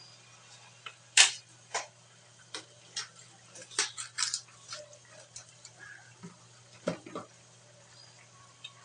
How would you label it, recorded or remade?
remade